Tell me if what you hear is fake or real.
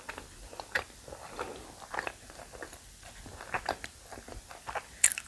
real